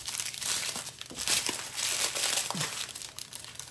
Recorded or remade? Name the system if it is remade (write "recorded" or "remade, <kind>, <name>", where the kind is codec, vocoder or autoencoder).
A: remade, vocoder, BigVGAN v2